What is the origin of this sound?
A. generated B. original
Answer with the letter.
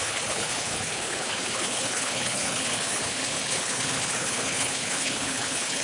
A